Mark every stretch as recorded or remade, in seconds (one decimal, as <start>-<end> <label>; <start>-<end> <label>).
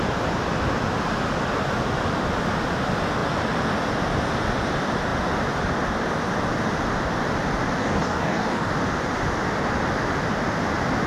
0.0-7.8 recorded; 7.8-8.7 remade; 8.7-11.1 recorded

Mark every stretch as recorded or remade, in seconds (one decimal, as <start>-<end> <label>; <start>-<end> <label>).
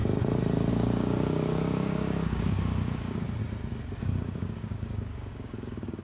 0.0-0.7 recorded; 0.7-3.4 remade; 3.4-4.0 recorded; 4.0-6.0 remade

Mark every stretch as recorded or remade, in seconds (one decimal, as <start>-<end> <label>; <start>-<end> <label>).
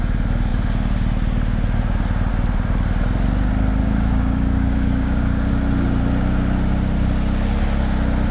0.0-3.8 recorded; 3.8-5.5 remade; 5.5-8.3 recorded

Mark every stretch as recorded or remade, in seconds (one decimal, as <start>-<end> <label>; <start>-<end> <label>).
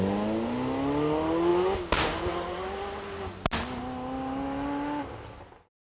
0.0-6.0 recorded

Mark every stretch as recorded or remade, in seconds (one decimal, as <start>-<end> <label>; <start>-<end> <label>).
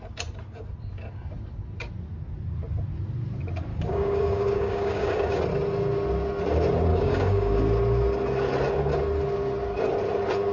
0.0-3.7 recorded; 3.7-5.4 remade; 5.4-6.9 recorded; 6.9-7.6 remade; 7.6-10.5 recorded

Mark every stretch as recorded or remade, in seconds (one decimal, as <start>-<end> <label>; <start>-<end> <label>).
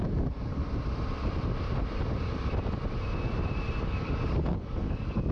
0.0-0.6 remade; 0.6-3.8 recorded; 3.8-5.3 remade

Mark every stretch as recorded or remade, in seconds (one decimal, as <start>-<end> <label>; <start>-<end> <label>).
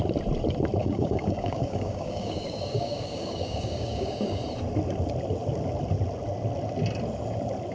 0.0-0.8 recorded; 0.8-4.4 remade; 4.4-7.7 recorded